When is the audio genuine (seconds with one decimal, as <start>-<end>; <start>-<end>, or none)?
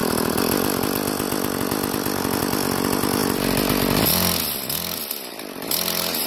0.0-6.3